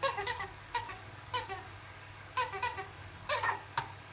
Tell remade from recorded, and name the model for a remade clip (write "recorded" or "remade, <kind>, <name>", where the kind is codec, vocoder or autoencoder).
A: remade, codec, DAC